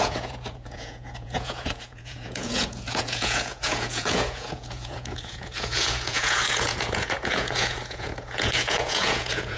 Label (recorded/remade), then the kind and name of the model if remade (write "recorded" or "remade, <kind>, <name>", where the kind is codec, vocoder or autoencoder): remade, vocoder, Vocos